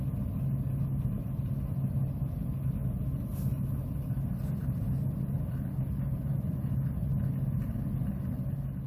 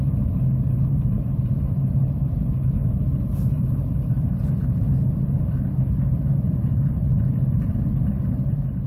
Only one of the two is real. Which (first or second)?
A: first